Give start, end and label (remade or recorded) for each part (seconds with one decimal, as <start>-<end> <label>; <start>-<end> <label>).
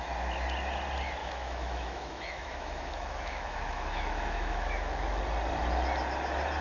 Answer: 0.0-1.2 recorded; 1.2-5.2 remade; 5.2-6.6 recorded